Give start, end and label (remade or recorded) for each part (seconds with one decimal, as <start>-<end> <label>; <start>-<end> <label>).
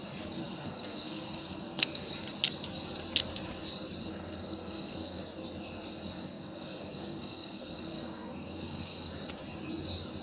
0.0-0.4 recorded; 0.4-2.1 remade; 2.1-4.0 recorded; 4.0-5.2 remade; 5.2-6.3 recorded; 6.3-9.1 remade; 9.1-10.2 recorded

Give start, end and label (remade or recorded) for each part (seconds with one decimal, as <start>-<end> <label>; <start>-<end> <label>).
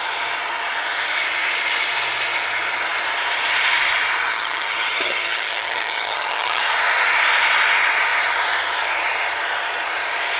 0.0-4.3 recorded; 4.3-6.6 remade; 6.6-10.4 recorded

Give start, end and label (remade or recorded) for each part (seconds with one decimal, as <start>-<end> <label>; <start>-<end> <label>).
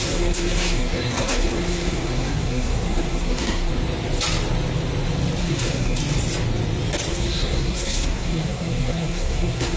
0.0-3.7 remade; 3.7-5.4 recorded; 5.4-6.0 remade; 6.0-7.1 recorded; 7.1-9.8 remade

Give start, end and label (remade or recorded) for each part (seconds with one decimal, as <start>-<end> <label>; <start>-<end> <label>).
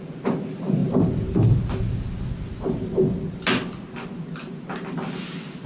0.0-5.7 recorded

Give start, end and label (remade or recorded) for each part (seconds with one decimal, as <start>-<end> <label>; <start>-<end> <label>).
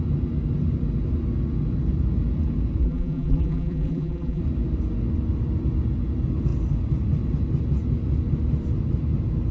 0.0-2.8 recorded; 2.8-4.4 remade; 4.4-9.5 recorded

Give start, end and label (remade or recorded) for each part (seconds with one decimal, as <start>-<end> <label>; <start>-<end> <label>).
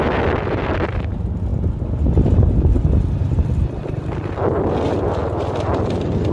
0.0-6.3 recorded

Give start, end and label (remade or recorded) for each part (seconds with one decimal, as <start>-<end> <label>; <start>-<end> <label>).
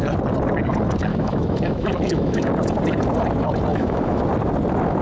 0.0-1.1 recorded; 1.1-2.5 remade; 2.5-3.7 recorded; 3.7-4.2 remade; 4.2-5.0 recorded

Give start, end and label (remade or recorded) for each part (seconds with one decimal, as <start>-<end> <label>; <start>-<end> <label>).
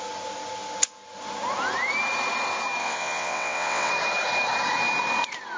0.0-2.8 recorded; 2.8-3.9 remade; 3.9-5.6 recorded